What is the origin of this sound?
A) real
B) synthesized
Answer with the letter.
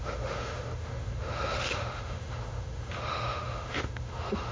B